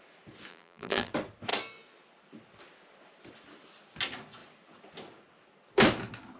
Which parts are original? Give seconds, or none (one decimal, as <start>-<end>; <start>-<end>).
0.0-0.5; 1.1-6.4